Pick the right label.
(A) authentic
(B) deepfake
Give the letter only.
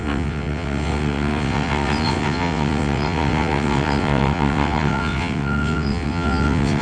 B